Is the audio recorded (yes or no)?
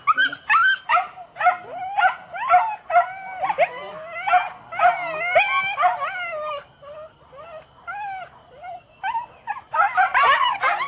yes